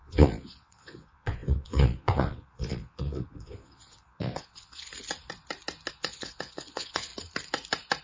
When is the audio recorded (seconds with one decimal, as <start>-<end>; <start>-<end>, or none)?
4.9-5.9; 7.1-8.0